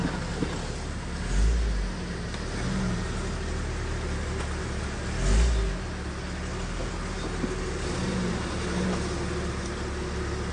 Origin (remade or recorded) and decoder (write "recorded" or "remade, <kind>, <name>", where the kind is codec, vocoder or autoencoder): recorded